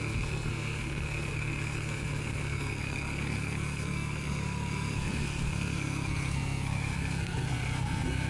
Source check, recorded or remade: remade